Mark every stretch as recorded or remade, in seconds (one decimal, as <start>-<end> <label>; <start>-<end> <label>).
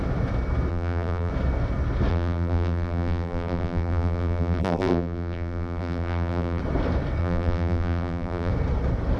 0.0-0.7 recorded; 0.7-1.3 remade; 1.3-2.1 recorded; 2.1-6.6 remade; 6.6-7.2 recorded; 7.2-8.5 remade; 8.5-9.2 recorded